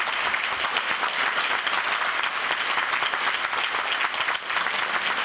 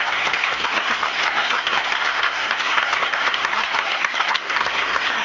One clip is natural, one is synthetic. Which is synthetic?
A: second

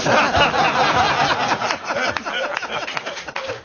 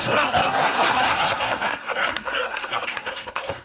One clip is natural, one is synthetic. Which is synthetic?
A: second